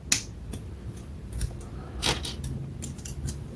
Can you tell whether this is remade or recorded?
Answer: recorded